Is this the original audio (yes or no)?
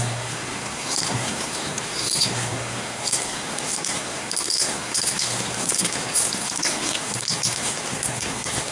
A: no